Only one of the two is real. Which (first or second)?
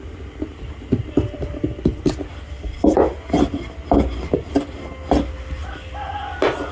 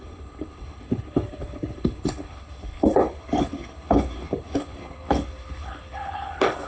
first